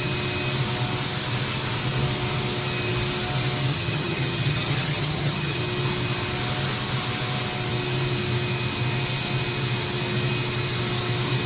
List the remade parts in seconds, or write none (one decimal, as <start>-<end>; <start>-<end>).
3.7-5.6